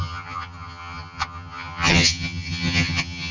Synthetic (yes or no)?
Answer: yes